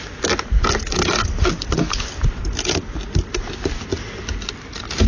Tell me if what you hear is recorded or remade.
recorded